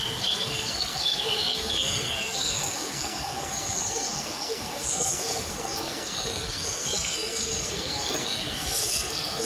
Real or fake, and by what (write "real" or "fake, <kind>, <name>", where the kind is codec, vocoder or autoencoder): fake, codec, SNAC